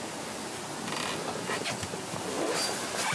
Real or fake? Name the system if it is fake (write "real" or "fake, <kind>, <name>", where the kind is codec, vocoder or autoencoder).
real